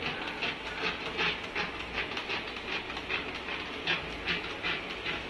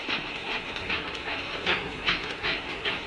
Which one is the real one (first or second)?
first